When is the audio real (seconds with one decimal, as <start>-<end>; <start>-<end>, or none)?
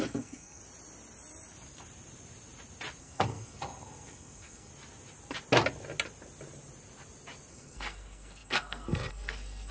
0.6-3.0; 4.7-7.5